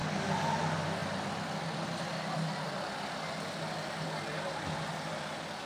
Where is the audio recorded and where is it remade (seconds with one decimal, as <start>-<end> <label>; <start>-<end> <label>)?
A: 0.0-5.7 recorded